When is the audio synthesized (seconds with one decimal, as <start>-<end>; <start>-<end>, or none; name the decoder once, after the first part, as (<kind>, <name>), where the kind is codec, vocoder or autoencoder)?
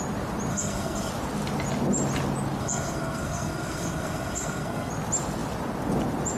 0.5-1.1 (codec, SNAC); 2.6-4.9